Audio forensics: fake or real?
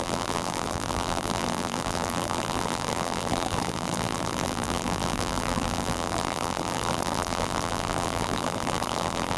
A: fake